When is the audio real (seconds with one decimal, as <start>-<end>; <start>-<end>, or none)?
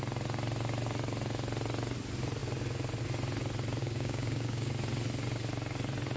0.0-3.8; 4.7-6.2